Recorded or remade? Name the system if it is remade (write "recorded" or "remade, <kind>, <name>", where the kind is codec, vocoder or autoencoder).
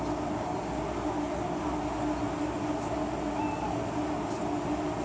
recorded